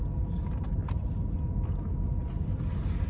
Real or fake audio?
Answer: real